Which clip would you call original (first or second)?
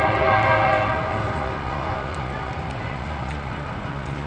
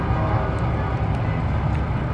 second